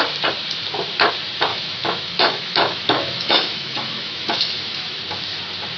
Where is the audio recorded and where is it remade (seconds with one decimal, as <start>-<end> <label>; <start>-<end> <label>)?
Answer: 0.0-1.5 recorded; 1.5-5.0 remade; 5.0-5.8 recorded